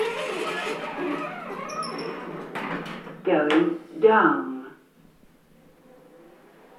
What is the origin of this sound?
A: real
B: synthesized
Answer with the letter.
A